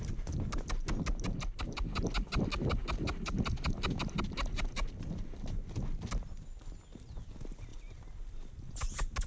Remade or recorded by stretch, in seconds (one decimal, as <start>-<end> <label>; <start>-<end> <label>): 0.0-9.3 recorded